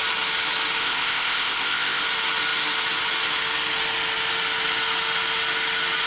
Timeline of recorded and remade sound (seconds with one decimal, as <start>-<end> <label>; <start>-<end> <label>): 0.0-0.8 recorded; 0.8-2.0 remade; 2.0-6.1 recorded